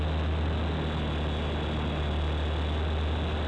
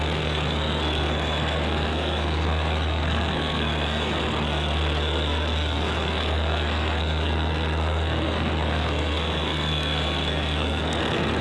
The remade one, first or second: second